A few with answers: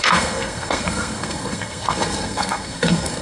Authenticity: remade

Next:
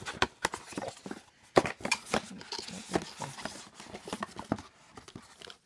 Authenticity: recorded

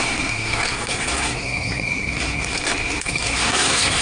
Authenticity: remade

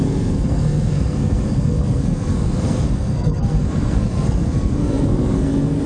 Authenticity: remade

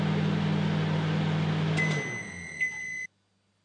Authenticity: recorded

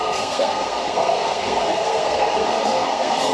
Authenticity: remade